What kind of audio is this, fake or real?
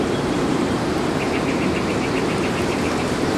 fake